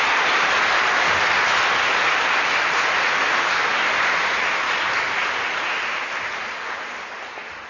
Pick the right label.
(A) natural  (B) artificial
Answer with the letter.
A